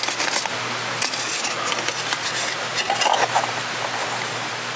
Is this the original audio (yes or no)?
yes